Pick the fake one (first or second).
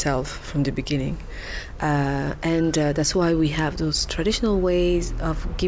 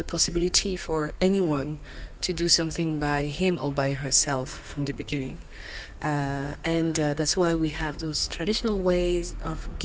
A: second